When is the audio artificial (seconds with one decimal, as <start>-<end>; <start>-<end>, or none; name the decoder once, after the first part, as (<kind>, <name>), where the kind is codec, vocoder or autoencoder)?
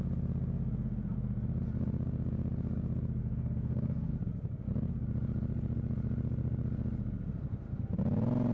3.2-4.1 (autoencoder, DAC-VAE)